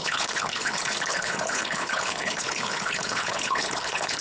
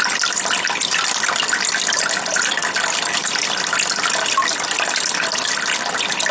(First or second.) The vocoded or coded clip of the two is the first